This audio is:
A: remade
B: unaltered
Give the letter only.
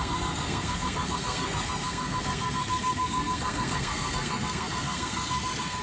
A